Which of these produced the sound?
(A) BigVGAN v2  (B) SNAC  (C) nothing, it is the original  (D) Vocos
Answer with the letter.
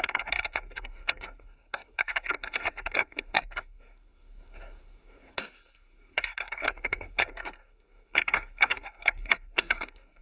B